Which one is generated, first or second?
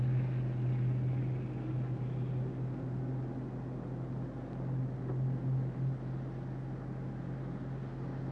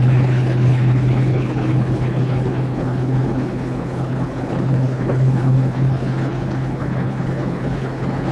second